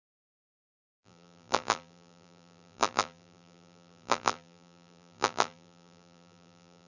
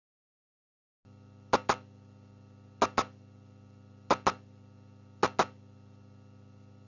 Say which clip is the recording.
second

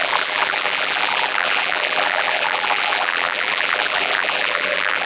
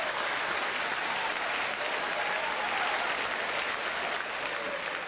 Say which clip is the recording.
second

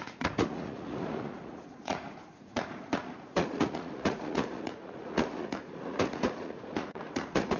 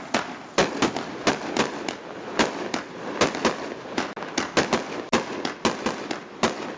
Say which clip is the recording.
second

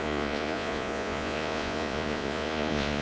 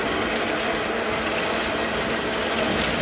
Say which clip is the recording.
second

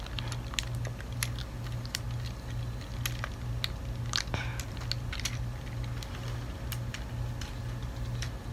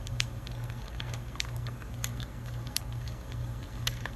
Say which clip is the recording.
first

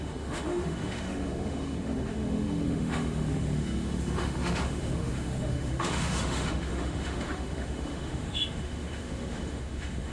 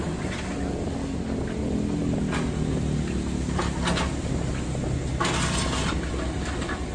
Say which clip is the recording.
second